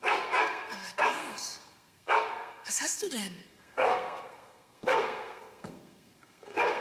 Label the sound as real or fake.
fake